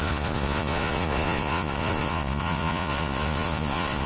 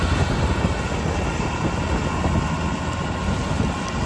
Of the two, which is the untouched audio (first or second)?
second